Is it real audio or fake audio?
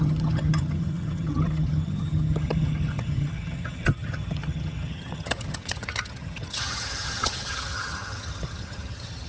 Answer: fake